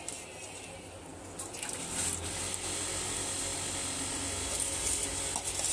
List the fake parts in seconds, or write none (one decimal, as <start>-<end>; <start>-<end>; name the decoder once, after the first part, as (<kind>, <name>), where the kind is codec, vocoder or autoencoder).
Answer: none